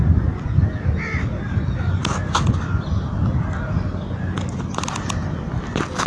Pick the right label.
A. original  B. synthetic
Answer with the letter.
A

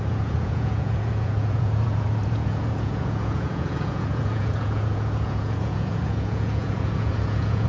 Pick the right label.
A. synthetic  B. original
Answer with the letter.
A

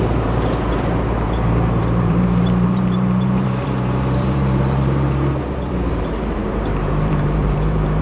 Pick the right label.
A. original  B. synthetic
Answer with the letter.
B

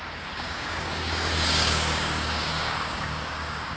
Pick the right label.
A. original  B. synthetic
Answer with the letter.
B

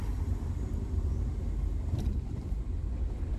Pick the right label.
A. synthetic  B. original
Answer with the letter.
B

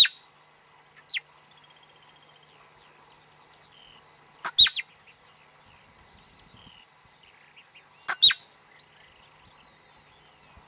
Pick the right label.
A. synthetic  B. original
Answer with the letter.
B